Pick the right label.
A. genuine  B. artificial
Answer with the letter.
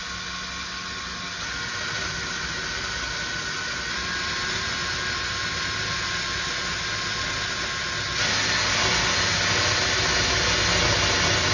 A